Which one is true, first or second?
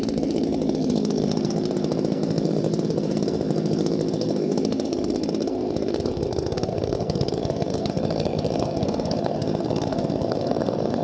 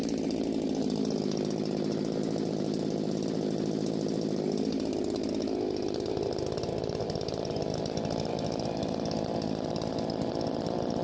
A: second